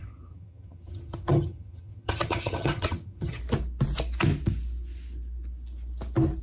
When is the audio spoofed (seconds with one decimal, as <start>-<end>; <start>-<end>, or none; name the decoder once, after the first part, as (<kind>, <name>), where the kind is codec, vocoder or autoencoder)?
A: 0.0-3.4 (vocoder, HiFi-GAN)